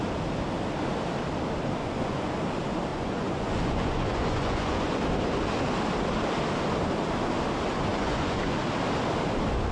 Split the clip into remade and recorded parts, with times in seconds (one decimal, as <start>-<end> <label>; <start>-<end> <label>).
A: 0.0-1.8 recorded; 1.8-2.3 remade; 2.3-2.9 recorded; 2.9-5.0 remade; 5.0-7.9 recorded; 7.9-8.6 remade; 8.6-9.7 recorded